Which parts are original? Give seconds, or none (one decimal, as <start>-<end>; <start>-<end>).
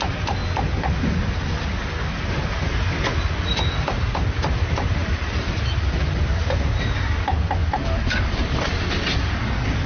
0.0-9.9